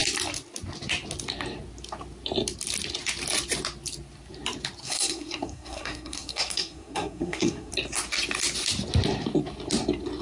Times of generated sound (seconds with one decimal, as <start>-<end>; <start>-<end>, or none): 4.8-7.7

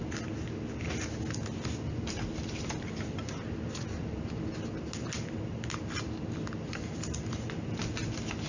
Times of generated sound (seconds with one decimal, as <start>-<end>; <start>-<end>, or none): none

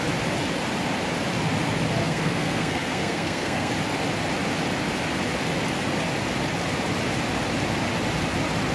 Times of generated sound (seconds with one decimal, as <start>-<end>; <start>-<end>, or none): 2.0-3.7

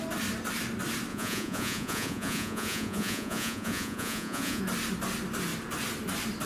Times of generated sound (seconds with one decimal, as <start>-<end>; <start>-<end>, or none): 1.1-4.6

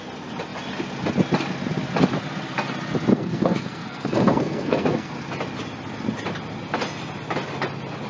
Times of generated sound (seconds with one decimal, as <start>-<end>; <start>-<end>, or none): 3.1-5.1

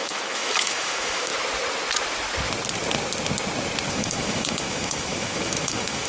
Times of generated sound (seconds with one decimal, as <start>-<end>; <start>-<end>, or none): 0.0-1.3; 3.9-6.1

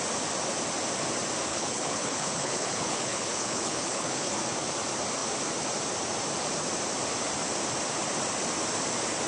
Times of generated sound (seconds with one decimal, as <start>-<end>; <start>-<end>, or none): 1.5-4.4